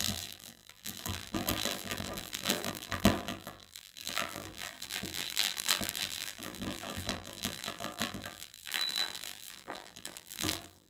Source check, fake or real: fake